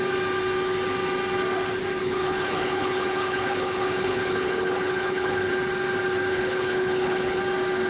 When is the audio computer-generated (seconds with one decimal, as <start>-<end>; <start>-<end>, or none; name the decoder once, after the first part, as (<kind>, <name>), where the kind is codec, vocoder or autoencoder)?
2.0-5.5 (codec, HILCodec); 6.3-7.4